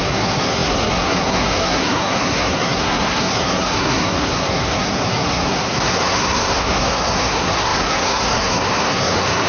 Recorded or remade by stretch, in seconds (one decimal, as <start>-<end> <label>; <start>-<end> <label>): 0.0-9.5 remade